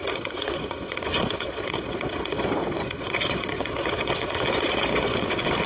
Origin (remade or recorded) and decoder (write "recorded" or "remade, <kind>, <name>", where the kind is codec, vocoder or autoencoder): remade, vocoder, Vocos